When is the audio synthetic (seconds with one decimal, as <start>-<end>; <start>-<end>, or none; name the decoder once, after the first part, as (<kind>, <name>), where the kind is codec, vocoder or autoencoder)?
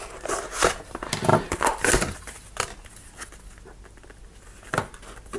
none